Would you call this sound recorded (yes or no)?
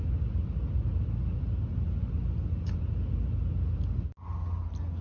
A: yes